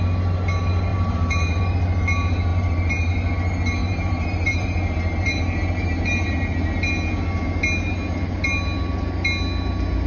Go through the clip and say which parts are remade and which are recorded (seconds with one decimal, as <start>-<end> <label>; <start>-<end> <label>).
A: 0.0-0.9 recorded; 0.9-1.6 remade; 1.6-2.5 recorded; 2.5-3.1 remade; 3.1-3.8 recorded; 3.8-6.7 remade; 6.7-10.1 recorded